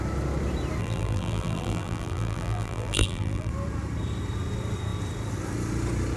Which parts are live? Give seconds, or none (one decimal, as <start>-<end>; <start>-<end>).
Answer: 0.0-0.8; 3.5-6.2